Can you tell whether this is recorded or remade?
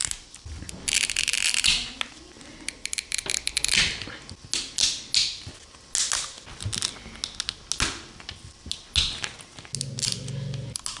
recorded